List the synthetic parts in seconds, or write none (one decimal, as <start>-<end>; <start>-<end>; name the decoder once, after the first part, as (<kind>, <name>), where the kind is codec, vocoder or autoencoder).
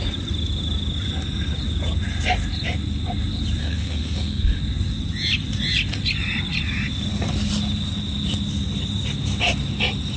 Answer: 3.6-4.6 (autoencoder, DAC-VAE)